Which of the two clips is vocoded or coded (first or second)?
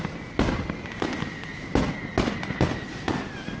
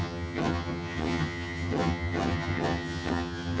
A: second